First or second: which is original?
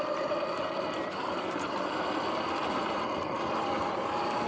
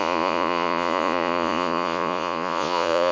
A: first